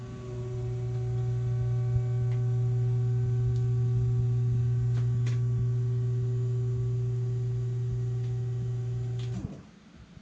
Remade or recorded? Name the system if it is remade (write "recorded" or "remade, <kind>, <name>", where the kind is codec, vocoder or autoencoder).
recorded